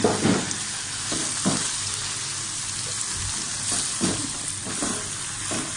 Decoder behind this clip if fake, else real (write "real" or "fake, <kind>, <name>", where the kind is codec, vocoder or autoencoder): real